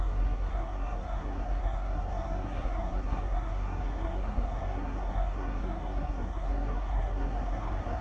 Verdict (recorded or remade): remade